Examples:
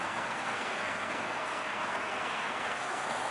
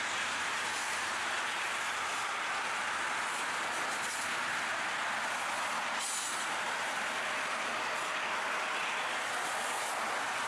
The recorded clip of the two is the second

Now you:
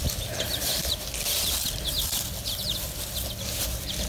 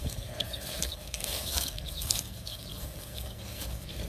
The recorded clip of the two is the first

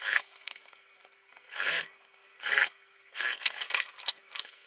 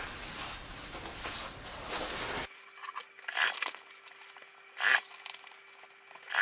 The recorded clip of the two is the second